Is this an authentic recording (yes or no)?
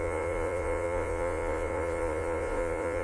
no